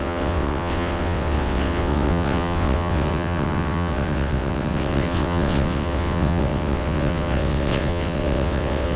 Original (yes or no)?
no